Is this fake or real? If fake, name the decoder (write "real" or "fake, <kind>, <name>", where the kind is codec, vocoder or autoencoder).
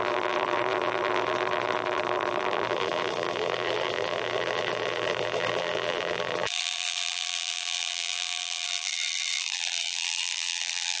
fake, vocoder, BigVGAN v2